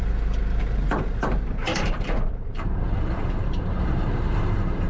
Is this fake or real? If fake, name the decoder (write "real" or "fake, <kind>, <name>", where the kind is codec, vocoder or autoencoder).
fake, vocoder, BigVGAN v2